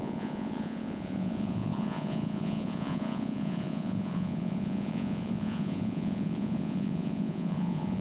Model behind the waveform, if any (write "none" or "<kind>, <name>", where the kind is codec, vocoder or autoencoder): vocoder, Vocos